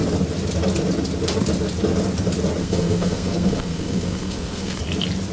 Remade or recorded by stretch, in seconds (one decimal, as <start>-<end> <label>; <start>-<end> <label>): 0.0-2.6 recorded; 2.6-4.8 remade; 4.8-5.3 recorded